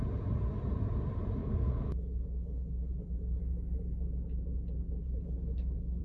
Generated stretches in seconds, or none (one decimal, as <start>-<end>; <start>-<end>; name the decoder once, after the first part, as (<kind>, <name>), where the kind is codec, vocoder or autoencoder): 1.4-3.4 (codec, HILCodec); 5.0-6.0